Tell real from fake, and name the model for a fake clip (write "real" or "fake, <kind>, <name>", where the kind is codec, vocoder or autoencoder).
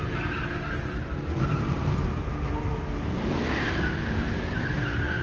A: fake, vocoder, BigVGAN v2